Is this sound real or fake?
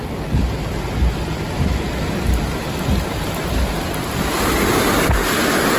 real